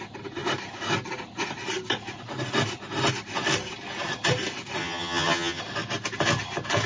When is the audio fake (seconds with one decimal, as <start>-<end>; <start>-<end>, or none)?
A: 4.8-5.6